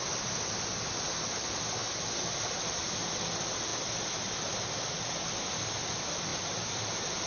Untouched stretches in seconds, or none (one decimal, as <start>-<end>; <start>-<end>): 0.0-6.3